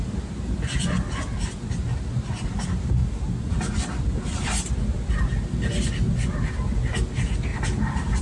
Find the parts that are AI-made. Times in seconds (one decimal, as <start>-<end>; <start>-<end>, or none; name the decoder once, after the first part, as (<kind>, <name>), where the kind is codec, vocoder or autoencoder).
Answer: none